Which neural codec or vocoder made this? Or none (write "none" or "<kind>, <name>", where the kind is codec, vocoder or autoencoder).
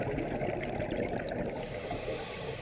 none